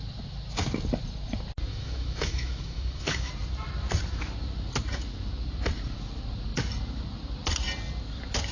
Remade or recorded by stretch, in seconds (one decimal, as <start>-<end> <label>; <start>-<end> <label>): 0.0-1.7 recorded; 1.7-3.3 remade; 3.3-8.5 recorded